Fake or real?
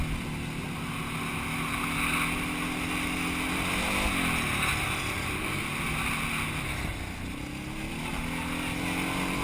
real